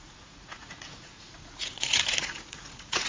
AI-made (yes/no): yes